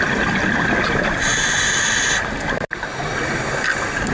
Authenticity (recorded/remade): recorded